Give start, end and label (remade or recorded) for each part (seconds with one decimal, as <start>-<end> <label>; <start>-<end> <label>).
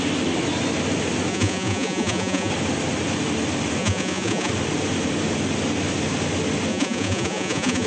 0.0-1.3 recorded; 1.3-2.5 remade; 2.5-3.8 recorded; 3.8-4.5 remade; 4.5-6.7 recorded; 6.7-7.9 remade